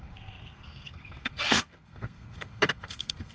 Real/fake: fake